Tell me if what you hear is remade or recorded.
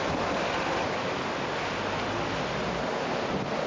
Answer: recorded